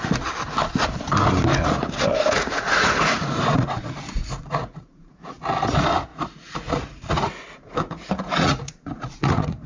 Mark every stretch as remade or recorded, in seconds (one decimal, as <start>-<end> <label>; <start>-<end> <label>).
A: 0.0-2.1 recorded; 2.1-5.4 remade; 5.4-6.1 recorded; 6.1-9.7 remade